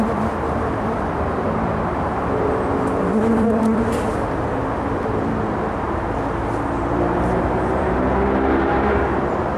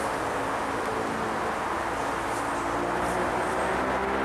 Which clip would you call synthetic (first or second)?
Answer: first